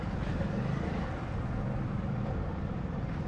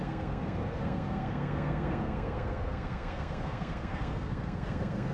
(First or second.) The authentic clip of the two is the first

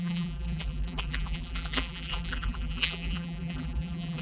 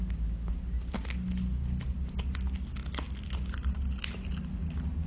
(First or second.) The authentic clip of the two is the second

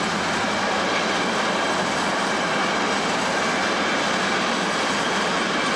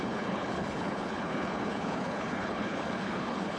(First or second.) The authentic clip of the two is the first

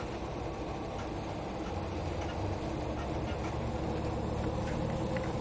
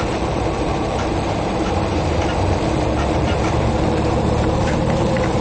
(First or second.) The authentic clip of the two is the first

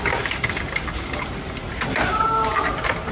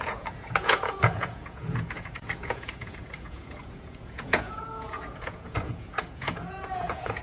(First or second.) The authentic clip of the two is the first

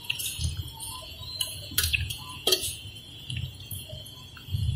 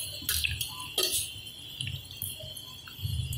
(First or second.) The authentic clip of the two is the second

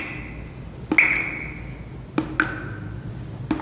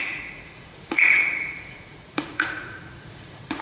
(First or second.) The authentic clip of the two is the first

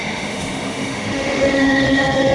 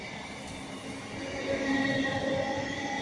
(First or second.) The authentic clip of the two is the second